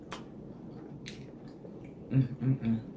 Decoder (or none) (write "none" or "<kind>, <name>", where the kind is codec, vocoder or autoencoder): none